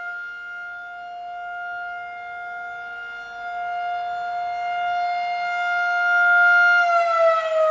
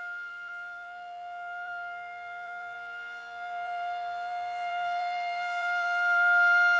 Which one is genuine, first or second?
first